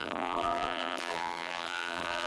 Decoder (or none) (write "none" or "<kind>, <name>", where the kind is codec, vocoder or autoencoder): vocoder, BigVGAN v2